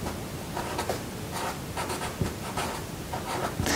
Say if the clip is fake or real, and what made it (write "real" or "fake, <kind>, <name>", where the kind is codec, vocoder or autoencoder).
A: fake, vocoder, BigVGAN v2